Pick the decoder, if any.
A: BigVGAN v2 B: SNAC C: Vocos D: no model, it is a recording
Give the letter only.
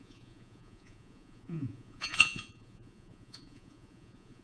C